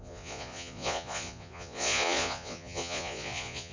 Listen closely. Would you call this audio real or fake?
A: fake